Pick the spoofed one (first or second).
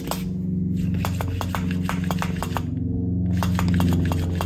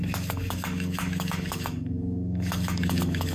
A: second